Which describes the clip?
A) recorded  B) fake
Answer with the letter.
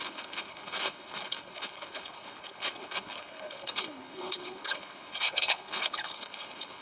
B